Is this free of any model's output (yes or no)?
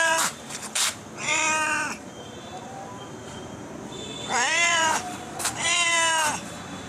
no